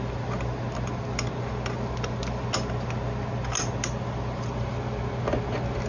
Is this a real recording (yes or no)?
yes